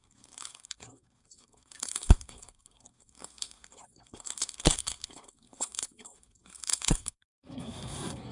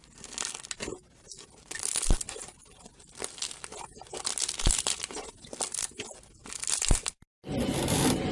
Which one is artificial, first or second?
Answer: first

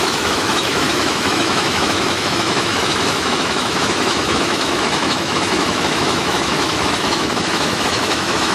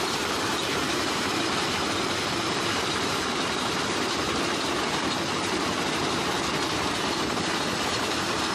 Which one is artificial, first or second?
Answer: first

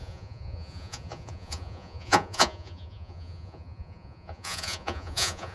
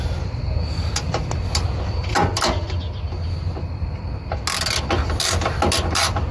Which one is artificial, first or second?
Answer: first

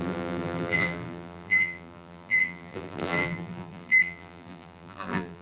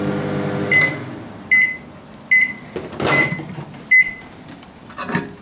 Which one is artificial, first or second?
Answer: first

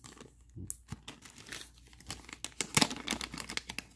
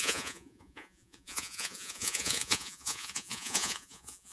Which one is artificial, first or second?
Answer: second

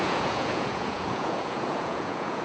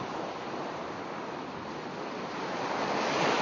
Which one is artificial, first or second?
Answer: first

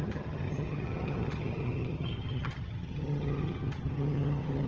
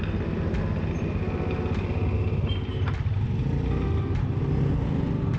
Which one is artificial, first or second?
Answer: first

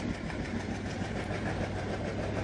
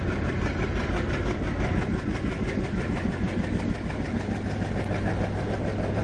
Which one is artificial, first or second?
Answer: first